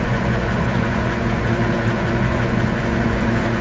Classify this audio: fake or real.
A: fake